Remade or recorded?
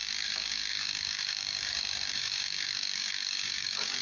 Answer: remade